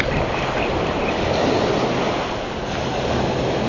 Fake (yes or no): no